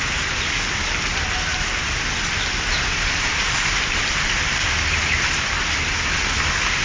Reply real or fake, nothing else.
real